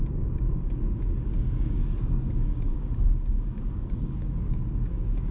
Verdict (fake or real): fake